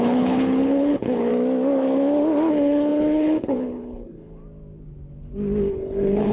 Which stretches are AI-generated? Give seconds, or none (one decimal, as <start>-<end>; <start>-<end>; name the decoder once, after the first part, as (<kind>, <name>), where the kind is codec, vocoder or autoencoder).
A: 0.0-1.3 (codec, HILCodec); 2.5-4.4; 5.7-6.3